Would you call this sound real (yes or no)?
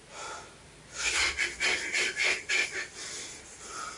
yes